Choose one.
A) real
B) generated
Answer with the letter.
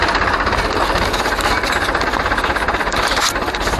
B